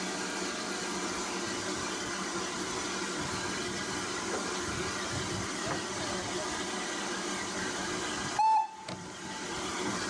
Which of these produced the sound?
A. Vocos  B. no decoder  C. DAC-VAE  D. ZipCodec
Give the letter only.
B